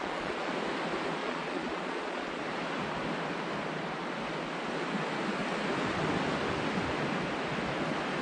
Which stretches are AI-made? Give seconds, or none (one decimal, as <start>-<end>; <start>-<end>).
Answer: 0.0-0.5; 1.2-2.4